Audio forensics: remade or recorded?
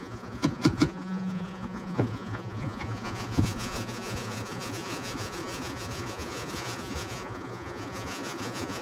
remade